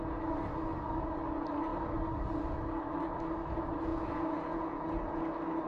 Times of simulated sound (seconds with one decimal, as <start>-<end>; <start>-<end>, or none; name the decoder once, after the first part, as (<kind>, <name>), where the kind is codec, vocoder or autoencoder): 3.9-5.2 (vocoder, Vocos)

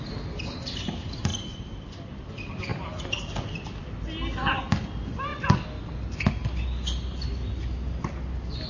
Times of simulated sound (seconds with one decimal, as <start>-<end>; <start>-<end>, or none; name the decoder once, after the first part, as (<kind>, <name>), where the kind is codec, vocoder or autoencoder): 1.3-2.3 (vocoder, BigVGAN v2); 2.7-3.8

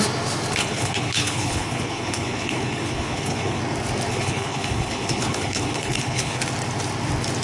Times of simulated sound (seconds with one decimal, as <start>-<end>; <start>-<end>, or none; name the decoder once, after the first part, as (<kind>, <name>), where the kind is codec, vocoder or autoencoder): 0.6-3.6 (codec, HILCodec); 4.1-6.4

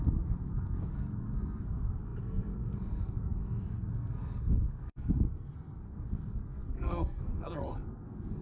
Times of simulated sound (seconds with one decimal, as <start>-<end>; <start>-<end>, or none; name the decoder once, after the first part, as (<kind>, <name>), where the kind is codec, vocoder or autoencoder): 0.0-8.4 (codec, SNAC)

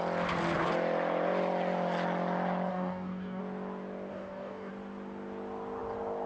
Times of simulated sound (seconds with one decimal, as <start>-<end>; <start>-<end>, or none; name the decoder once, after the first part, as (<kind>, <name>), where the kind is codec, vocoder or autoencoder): 2.7-3.4 (codec, DAC); 4.1-4.7

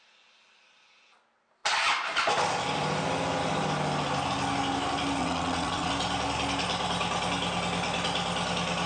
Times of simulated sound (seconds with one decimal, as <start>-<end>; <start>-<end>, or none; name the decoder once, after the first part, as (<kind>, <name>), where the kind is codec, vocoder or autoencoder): 5.2-5.9 (vocoder, WaveNeXt)

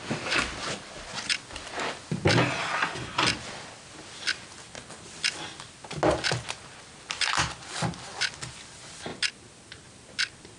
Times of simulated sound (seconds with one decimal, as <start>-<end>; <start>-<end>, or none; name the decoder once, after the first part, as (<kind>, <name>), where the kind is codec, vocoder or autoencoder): none

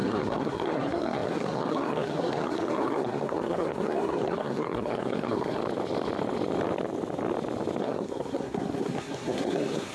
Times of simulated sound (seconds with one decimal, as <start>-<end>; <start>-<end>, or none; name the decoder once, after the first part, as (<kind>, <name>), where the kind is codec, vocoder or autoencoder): 0.0-5.6 (codec, SNAC); 7.8-9.9